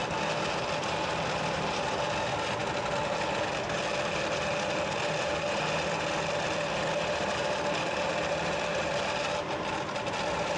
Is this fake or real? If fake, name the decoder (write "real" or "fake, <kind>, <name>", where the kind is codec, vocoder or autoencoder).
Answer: real